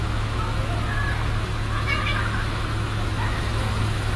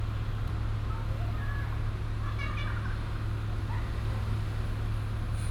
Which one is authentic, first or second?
second